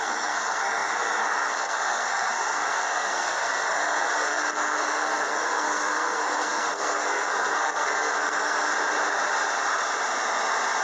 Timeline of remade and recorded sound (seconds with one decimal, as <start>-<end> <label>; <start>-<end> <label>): 0.0-8.7 remade; 8.7-10.8 recorded